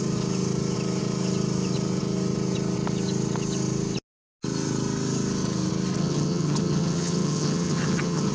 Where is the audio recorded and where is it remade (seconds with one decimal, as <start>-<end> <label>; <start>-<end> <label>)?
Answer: 0.0-6.0 recorded; 6.0-8.3 remade